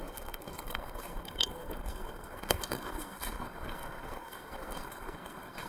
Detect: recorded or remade remade